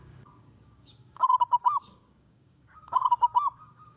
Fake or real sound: fake